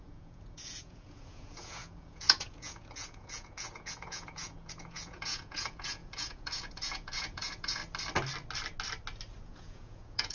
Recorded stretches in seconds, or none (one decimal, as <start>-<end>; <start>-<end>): 7.8-9.4